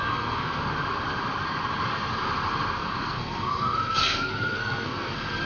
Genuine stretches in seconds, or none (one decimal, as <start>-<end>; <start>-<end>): 0.6-2.8